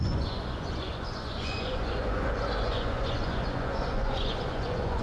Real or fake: fake